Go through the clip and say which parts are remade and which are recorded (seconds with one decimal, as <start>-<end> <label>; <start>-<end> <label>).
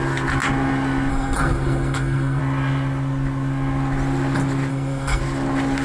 0.0-1.1 recorded; 1.1-2.4 remade; 2.4-4.7 recorded; 4.7-5.2 remade; 5.2-5.8 recorded